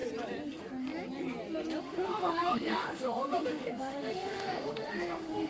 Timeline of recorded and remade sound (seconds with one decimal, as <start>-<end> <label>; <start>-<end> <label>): 0.0-1.8 recorded; 1.8-5.5 remade